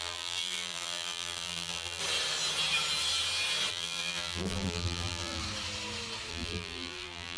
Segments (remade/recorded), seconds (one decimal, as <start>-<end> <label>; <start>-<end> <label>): 0.0-2.0 remade; 2.0-3.7 recorded; 3.7-5.4 remade; 5.4-6.3 recorded; 6.3-7.4 remade